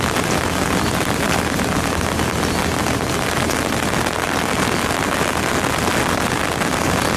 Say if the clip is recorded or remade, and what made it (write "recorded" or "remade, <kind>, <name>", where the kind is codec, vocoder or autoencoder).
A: recorded